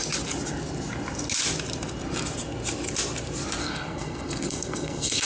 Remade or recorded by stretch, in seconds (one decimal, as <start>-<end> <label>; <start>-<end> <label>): 0.0-3.6 recorded; 3.6-5.3 remade